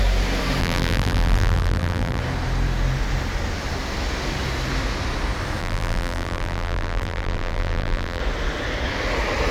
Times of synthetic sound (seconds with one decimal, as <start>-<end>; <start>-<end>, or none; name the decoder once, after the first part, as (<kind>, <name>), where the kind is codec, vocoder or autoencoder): 0.6-2.2 (vocoder, BigVGAN v2); 5.6-8.2